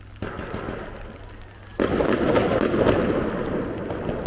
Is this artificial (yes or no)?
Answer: no